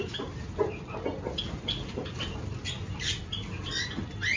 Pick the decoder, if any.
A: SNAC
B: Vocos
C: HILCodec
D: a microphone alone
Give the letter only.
D